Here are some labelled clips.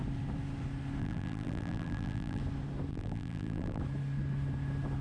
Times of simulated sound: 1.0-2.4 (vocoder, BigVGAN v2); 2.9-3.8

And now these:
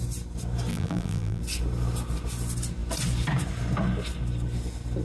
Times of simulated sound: 0.7-1.4 (vocoder, BigVGAN v2)

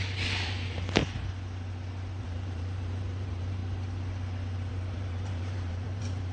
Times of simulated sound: 0.0-1.0 (vocoder, BigVGAN v2); 2.2-3.6; 4.7-6.3

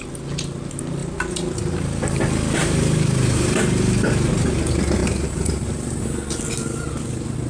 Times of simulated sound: 2.6-4.0 (vocoder, BigVGAN v2); 5.0-6.0

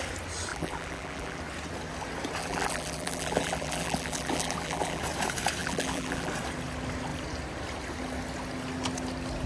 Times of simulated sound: 0.5-1.4 (vocoder, BigVGAN v2); 2.4-5.0; 5.6-6.3